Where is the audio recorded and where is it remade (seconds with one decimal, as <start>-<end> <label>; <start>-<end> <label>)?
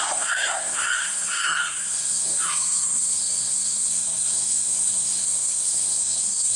0.0-6.6 remade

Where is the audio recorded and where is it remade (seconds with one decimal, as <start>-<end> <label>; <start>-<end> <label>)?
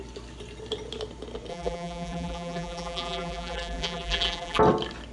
0.0-1.5 recorded; 1.5-4.6 remade; 4.6-5.1 recorded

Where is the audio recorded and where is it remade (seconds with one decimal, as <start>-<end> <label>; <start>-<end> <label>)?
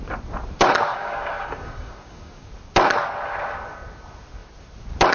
0.0-0.9 recorded; 0.9-2.5 remade; 2.5-5.1 recorded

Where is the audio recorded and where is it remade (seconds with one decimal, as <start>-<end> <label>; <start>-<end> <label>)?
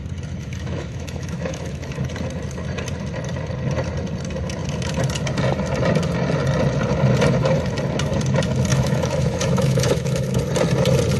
0.0-0.4 recorded; 0.4-2.1 remade; 2.1-8.7 recorded; 8.7-10.4 remade; 10.4-11.2 recorded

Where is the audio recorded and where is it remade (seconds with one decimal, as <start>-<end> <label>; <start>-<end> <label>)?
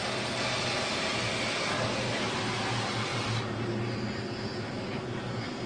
0.0-5.7 recorded